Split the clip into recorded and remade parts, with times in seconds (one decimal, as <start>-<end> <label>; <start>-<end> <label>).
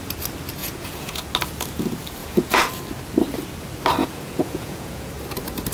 0.0-0.6 recorded; 0.6-1.2 remade; 1.2-2.2 recorded; 2.2-2.7 remade; 2.7-4.0 recorded; 4.0-5.1 remade; 5.1-5.7 recorded